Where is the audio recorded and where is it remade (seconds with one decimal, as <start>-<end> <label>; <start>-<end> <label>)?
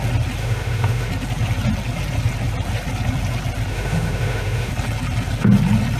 0.0-0.4 recorded; 0.4-1.1 remade; 1.1-3.7 recorded; 3.7-4.7 remade; 4.7-6.0 recorded